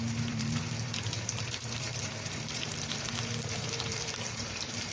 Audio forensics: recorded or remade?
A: remade